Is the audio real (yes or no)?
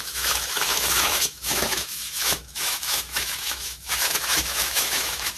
no